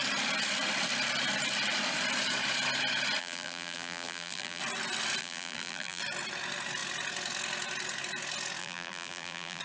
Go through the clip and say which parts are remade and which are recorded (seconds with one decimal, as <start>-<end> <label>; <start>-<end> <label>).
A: 0.0-3.2 recorded; 3.2-4.6 remade; 4.6-5.2 recorded; 5.2-6.0 remade; 6.0-8.6 recorded; 8.6-9.6 remade